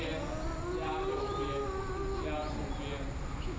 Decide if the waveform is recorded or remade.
recorded